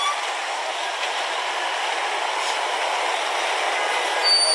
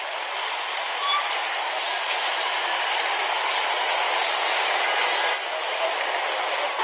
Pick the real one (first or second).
first